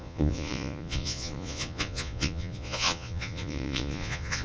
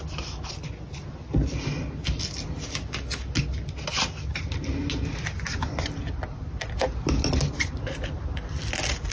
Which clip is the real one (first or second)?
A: second